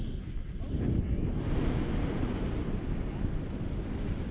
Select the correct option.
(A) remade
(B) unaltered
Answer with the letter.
A